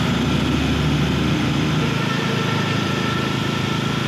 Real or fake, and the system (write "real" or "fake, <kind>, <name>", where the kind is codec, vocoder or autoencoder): real